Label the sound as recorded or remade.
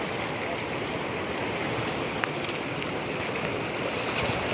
recorded